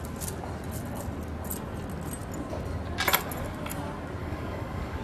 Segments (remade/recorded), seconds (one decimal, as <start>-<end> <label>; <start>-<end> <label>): 0.0-4.2 recorded; 4.2-5.0 remade